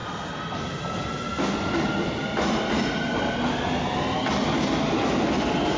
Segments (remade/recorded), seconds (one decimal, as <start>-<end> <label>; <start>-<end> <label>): 0.0-5.8 recorded